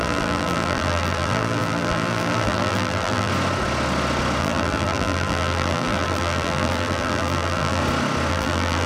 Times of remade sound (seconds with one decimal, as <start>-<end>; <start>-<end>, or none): 0.0-3.3; 4.4-7.8; 8.3-8.9